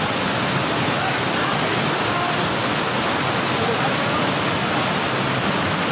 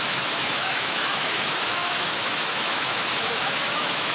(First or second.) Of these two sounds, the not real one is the second